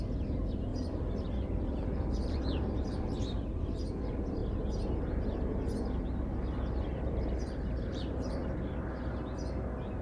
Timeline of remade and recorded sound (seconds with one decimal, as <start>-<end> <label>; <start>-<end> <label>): 0.0-4.4 remade; 4.4-7.1 recorded; 7.1-8.4 remade; 8.4-10.0 recorded